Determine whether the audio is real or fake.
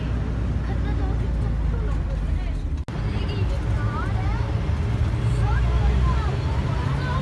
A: real